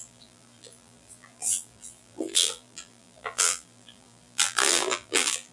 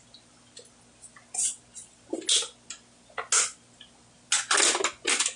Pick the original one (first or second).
second